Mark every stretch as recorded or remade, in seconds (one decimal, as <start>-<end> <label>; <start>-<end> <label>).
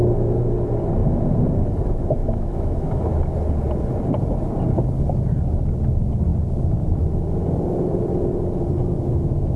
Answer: 0.0-2.2 recorded; 2.2-3.0 remade; 3.0-9.6 recorded